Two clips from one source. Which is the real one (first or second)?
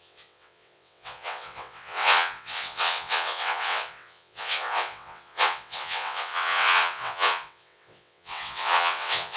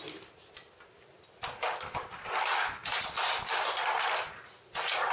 second